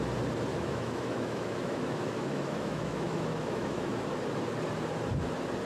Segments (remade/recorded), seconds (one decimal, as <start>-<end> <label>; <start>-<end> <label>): 0.0-0.5 recorded; 0.5-3.9 remade; 3.9-5.7 recorded